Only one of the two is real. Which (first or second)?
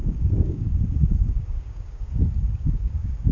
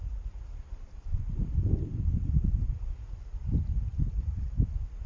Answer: second